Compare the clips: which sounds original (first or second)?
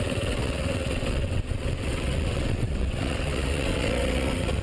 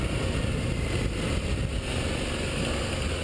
second